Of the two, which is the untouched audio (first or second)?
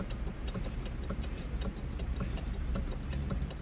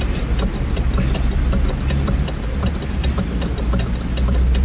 second